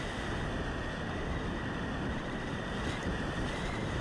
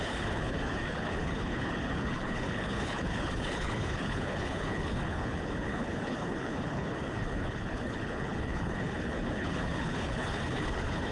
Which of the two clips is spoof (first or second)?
second